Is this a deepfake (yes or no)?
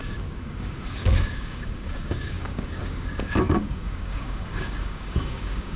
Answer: yes